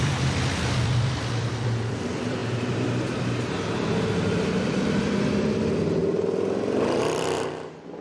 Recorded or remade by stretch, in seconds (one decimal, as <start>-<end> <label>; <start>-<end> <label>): 0.0-6.0 remade; 6.0-7.0 recorded; 7.0-8.0 remade